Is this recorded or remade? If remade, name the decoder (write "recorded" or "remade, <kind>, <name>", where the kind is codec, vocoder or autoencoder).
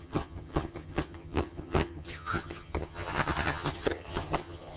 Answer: remade, vocoder, HiFi-GAN